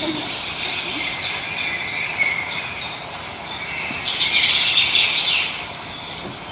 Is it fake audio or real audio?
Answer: real